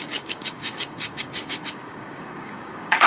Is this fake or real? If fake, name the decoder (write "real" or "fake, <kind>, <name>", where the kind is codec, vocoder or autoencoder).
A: fake, codec, DAC